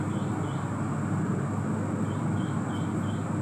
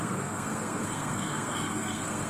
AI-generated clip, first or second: second